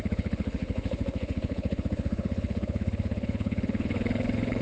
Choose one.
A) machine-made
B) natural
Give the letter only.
A